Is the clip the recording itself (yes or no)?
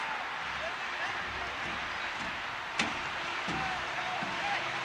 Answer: yes